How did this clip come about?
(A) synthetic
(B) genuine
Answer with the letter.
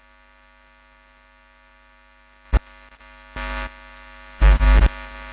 B